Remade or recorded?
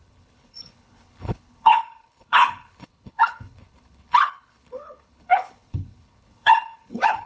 remade